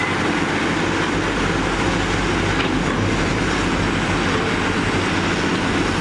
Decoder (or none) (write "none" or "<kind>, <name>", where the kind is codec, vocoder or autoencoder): none